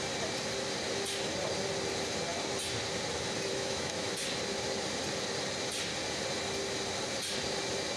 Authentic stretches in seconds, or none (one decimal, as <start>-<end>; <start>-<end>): 0.0-3.5; 4.1-8.0